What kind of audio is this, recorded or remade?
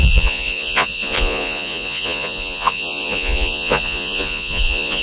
remade